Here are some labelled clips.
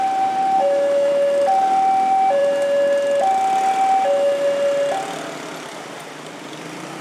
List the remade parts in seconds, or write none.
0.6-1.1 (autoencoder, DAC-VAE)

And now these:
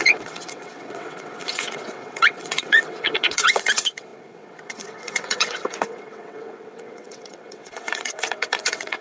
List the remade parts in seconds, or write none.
0.0-9.0 (vocoder, WaveNeXt)

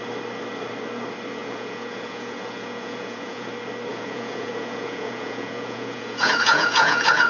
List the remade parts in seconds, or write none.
1.4-3.5 (vocoder, Vocos); 3.9-7.3

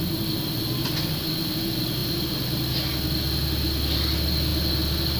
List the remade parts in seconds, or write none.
none

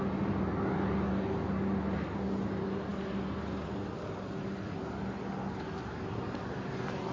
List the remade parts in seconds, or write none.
none

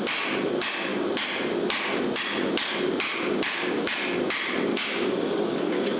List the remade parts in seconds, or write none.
4.7-6.0 (codec, DAC)

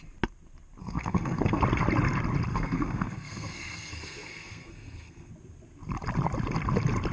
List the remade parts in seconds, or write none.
0.8-1.6 (codec, SNAC); 2.5-5.3